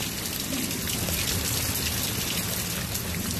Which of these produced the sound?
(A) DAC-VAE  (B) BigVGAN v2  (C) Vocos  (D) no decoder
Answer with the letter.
D